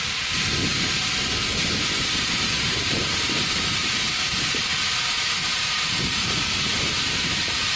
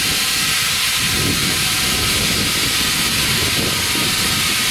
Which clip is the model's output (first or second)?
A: first